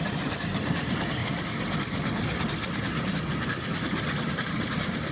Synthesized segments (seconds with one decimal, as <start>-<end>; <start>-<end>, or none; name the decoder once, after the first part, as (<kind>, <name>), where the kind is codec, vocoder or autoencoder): 0.0-1.2 (vocoder, BigVGAN v2); 4.3-5.1